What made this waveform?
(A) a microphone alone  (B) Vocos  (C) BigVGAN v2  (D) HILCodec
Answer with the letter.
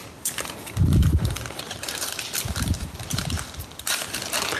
C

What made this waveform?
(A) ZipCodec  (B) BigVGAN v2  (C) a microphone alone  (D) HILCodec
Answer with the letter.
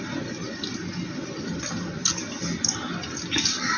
C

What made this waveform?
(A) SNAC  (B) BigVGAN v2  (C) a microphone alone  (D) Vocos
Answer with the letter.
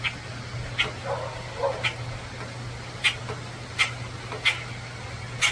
C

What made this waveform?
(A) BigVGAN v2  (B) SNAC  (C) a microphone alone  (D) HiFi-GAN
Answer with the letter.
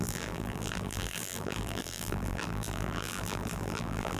A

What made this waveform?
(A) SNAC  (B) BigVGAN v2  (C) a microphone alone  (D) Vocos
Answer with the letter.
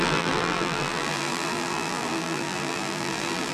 B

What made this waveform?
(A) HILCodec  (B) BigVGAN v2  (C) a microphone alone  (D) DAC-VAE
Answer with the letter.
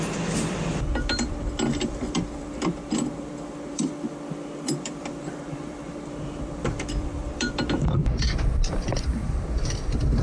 B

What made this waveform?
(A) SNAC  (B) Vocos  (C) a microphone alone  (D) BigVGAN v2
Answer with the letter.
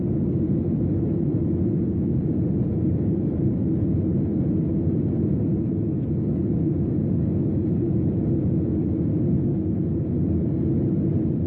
C